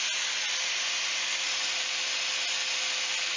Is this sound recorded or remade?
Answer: recorded